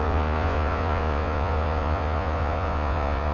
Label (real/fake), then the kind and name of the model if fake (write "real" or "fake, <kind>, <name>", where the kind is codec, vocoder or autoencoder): fake, vocoder, Vocos